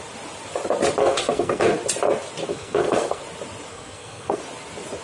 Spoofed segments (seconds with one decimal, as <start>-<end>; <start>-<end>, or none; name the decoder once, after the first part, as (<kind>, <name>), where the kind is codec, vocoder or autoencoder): 1.0-1.7 (codec, SNAC); 2.5-3.2; 3.7-4.4